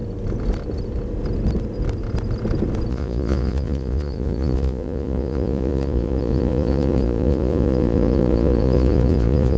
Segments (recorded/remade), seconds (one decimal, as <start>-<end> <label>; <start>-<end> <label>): 0.0-2.9 recorded; 2.9-9.6 remade